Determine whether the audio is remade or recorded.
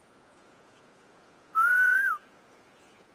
remade